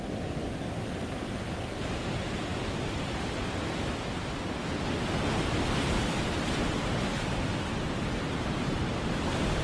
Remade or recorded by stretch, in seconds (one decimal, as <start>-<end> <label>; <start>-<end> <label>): 0.0-9.6 recorded